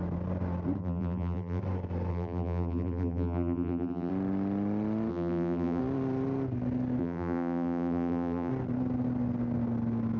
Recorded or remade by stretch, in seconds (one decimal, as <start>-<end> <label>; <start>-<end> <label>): 0.0-0.8 recorded; 0.8-1.6 remade; 1.6-2.1 recorded; 2.1-4.1 remade; 4.1-5.1 recorded; 5.1-5.8 remade; 5.8-7.0 recorded; 7.0-8.5 remade; 8.5-10.2 recorded